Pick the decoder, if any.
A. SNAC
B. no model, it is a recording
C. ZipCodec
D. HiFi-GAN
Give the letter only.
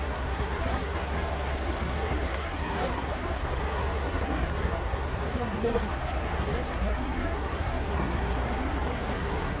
A